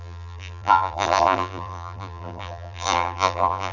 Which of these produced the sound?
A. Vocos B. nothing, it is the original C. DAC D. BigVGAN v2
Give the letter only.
D